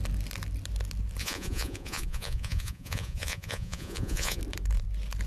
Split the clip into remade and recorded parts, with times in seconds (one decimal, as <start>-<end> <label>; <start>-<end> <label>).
0.0-1.2 recorded; 1.2-4.4 remade; 4.4-5.3 recorded